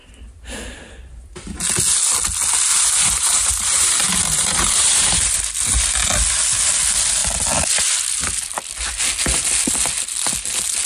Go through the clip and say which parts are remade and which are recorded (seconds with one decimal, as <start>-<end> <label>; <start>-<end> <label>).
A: 0.0-2.7 recorded; 2.7-5.4 remade; 5.4-10.9 recorded

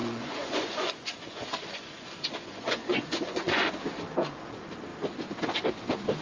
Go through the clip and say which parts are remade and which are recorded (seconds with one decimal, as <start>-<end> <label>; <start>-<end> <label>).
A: 0.0-3.7 remade; 3.7-6.2 recorded

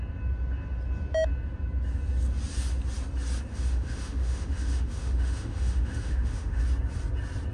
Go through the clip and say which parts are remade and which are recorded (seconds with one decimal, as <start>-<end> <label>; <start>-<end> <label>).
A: 0.0-3.5 recorded; 3.5-6.6 remade; 6.6-7.5 recorded

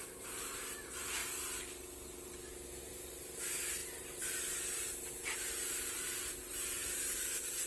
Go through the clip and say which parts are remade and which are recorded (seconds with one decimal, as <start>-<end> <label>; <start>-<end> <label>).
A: 0.0-1.2 remade; 1.2-2.8 recorded; 2.8-7.7 remade

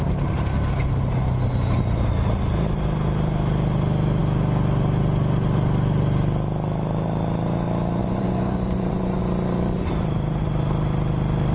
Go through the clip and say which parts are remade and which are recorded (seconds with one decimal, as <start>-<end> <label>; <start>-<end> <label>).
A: 0.0-8.0 recorded; 8.0-9.2 remade; 9.2-11.5 recorded

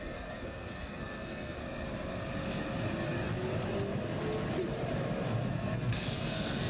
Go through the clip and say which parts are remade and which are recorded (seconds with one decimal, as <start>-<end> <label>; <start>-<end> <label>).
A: 0.0-1.6 remade; 1.6-5.5 recorded; 5.5-6.7 remade